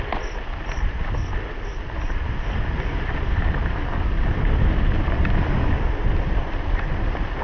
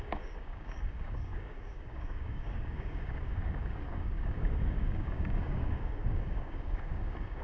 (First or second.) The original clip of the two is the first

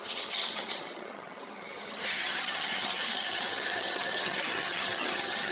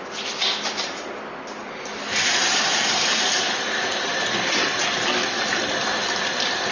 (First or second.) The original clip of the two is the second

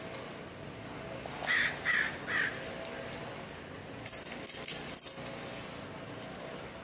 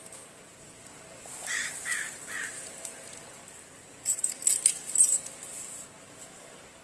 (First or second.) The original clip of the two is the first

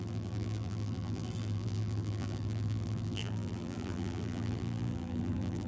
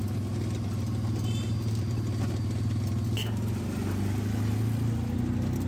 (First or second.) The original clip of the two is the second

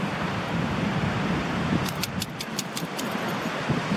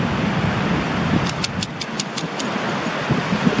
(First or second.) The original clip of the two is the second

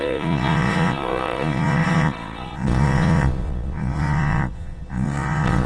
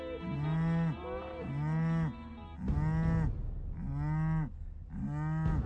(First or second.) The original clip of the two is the second